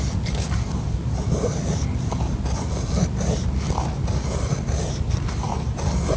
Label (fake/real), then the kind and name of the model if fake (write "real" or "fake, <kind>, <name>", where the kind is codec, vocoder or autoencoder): real